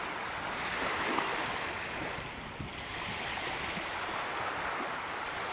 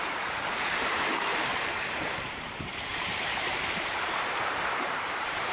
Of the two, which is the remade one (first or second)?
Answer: second